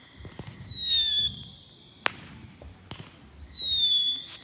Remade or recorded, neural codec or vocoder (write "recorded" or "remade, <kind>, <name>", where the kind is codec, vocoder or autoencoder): recorded